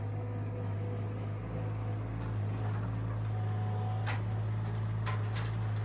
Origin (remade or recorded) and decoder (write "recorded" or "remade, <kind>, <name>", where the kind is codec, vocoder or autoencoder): recorded